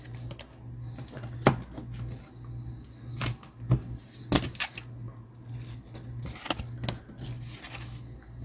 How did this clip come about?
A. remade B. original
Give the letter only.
B